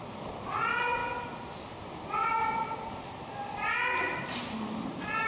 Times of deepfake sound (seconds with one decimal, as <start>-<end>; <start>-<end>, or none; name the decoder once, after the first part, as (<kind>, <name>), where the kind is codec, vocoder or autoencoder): none